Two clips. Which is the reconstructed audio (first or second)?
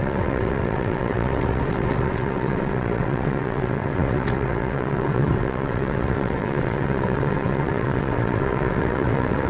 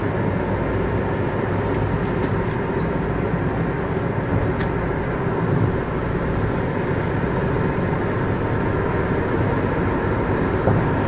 first